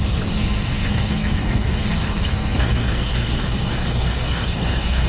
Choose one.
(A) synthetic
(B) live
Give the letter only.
A